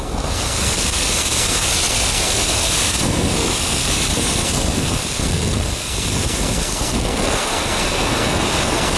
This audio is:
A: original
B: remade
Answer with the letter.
B